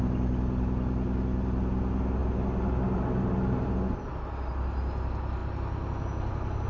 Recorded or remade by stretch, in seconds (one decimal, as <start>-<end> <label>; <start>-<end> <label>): 0.0-6.7 recorded